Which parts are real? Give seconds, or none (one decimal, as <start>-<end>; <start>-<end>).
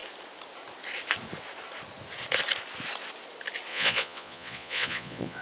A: 0.0-3.7